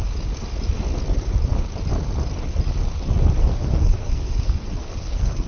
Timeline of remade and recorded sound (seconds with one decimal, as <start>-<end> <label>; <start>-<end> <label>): 0.0-3.4 recorded; 3.4-5.5 remade